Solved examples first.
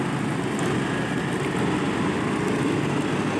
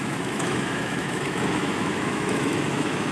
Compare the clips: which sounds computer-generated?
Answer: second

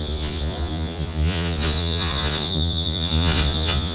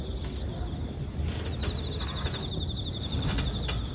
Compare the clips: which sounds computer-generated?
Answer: first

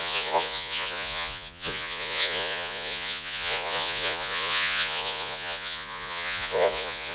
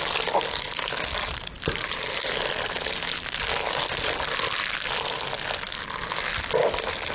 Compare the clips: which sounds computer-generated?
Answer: first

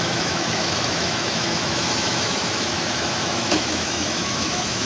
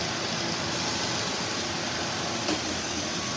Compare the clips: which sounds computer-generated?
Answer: first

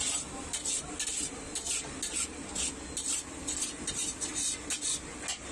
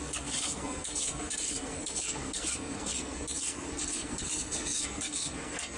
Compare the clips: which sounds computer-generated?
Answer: second